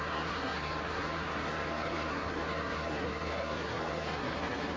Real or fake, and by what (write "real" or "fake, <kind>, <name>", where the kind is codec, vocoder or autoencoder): fake, codec, SNAC